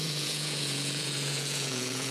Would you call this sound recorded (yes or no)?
no